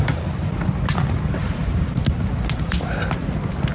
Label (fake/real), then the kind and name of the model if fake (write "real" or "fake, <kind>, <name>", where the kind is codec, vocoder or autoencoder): real